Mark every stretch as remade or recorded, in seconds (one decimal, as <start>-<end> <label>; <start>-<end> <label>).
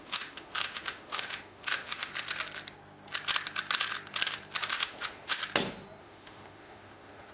0.0-2.1 remade; 2.1-4.7 recorded; 4.7-5.4 remade; 5.4-6.0 recorded; 6.0-7.3 remade